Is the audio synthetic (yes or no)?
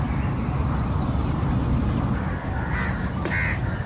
no